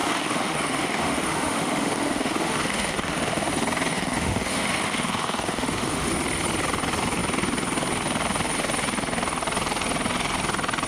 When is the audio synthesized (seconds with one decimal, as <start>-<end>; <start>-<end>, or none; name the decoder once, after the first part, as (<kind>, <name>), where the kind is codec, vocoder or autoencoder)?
0.0-3.5 (autoencoder, DAC-VAE); 3.9-6.1